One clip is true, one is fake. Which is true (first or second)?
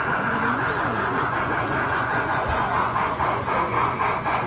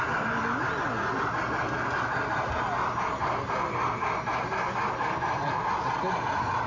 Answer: second